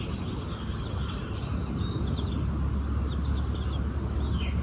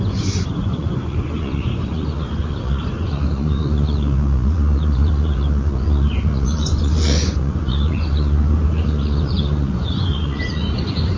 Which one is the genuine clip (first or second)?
first